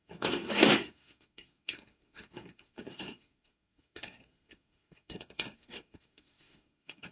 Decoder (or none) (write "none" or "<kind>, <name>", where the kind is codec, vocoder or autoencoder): codec, SNAC